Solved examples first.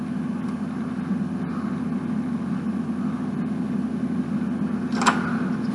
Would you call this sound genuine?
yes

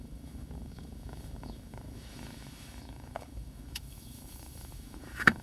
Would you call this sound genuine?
no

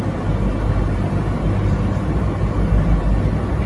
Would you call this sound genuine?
yes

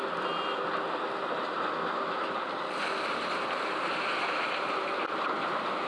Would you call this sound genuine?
yes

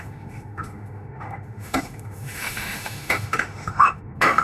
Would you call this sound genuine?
no